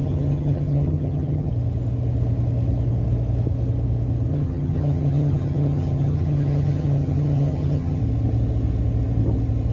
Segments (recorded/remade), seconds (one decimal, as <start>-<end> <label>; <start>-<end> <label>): 0.0-1.5 remade; 1.5-4.3 recorded; 4.3-8.0 remade; 8.0-9.7 recorded